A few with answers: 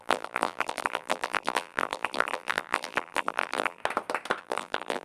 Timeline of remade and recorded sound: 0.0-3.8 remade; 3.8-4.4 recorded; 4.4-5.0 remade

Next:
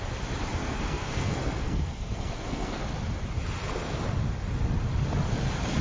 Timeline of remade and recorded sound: 0.0-0.6 recorded; 0.6-2.8 remade; 2.8-5.8 recorded

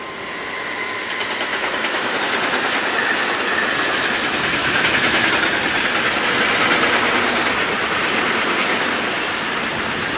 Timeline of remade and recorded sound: 0.0-1.5 recorded; 1.5-2.2 remade; 2.2-4.6 recorded; 4.6-5.3 remade; 5.3-10.2 recorded